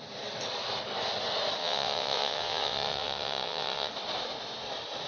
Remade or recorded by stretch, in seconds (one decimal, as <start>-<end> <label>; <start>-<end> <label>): 0.0-1.6 recorded; 1.6-3.9 remade; 3.9-5.1 recorded

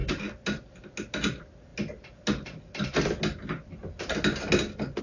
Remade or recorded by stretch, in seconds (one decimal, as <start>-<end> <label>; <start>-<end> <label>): 0.0-5.0 recorded